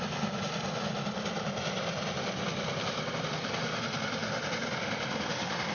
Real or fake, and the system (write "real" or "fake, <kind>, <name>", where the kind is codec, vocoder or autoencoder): real